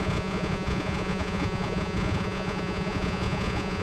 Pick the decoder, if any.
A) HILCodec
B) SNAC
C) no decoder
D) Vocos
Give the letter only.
D